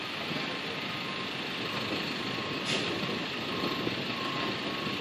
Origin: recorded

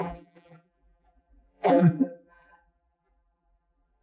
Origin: remade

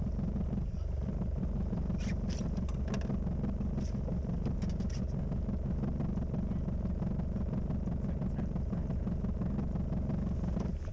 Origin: recorded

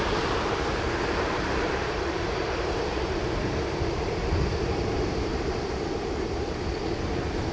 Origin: remade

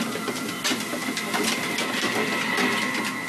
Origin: recorded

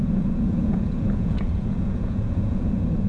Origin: remade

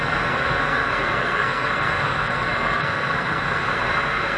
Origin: remade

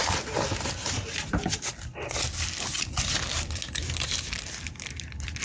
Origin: recorded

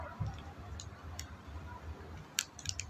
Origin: recorded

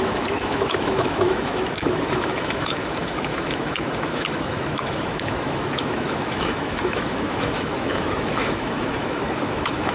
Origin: remade